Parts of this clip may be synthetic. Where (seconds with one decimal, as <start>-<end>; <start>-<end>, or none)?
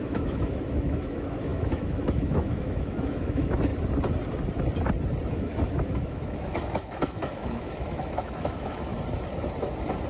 0.0-3.7; 5.3-8.9